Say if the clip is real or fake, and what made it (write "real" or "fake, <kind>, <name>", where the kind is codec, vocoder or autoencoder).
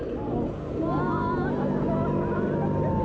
real